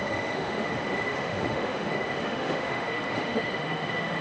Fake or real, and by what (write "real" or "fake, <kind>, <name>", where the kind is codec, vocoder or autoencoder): fake, autoencoder, DAC-VAE